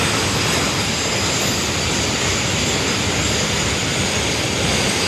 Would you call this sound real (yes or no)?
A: yes